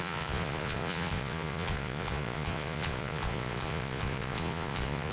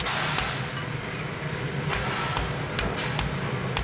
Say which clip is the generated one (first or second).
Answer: first